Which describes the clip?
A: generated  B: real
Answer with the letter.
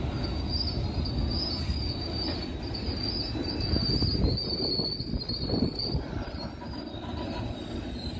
B